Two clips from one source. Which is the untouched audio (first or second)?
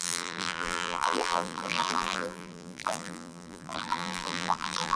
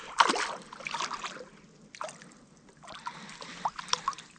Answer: second